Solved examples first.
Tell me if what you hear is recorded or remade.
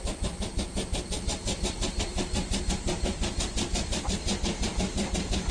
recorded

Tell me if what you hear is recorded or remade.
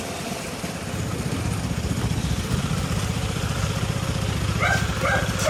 remade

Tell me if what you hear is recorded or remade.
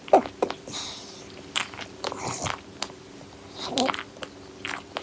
recorded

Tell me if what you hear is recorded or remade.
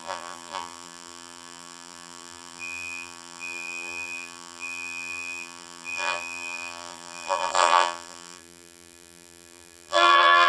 remade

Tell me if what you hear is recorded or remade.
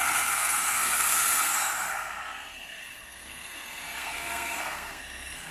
remade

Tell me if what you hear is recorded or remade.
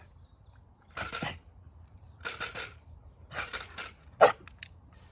recorded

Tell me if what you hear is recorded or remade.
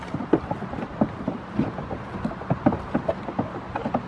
recorded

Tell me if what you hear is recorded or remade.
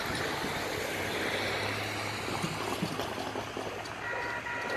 recorded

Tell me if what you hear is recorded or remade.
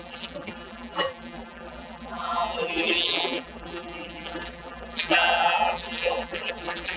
remade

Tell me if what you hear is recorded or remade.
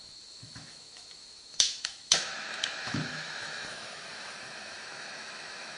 remade